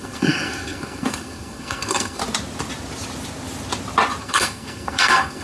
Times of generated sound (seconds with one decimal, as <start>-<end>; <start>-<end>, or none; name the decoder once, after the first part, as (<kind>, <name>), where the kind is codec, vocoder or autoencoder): 0.0-2.2 (codec, SNAC); 4.2-5.4